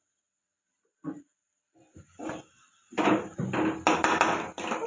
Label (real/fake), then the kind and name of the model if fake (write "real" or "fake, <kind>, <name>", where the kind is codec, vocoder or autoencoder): real